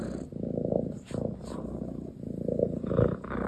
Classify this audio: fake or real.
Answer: real